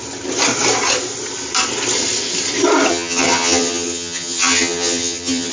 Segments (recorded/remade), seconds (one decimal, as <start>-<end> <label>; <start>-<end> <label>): 0.0-2.9 recorded; 2.9-5.5 remade